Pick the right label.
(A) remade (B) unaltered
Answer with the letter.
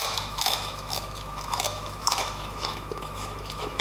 A